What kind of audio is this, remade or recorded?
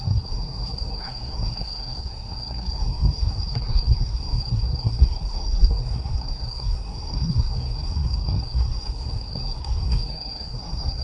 remade